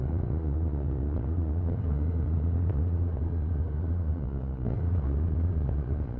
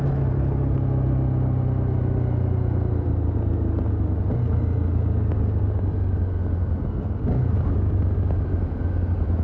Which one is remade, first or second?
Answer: first